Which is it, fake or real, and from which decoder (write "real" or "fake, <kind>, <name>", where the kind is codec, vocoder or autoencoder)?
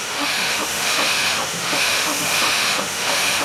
fake, autoencoder, DAC-VAE